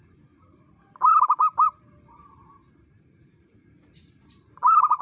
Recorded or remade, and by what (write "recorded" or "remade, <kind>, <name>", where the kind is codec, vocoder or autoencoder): remade, vocoder, BigVGAN v2